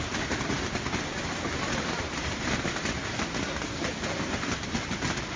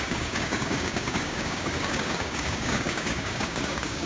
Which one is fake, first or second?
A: second